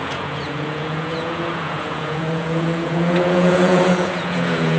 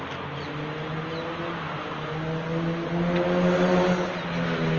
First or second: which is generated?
first